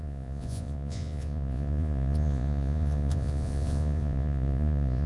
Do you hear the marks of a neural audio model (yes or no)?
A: yes